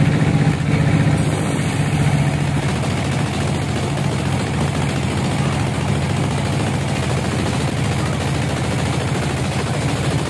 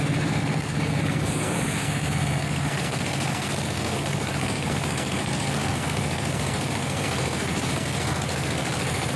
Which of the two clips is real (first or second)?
first